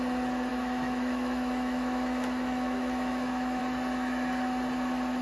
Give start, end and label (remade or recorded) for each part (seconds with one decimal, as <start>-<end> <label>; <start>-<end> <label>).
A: 0.0-0.5 recorded; 0.5-3.6 remade; 3.6-5.2 recorded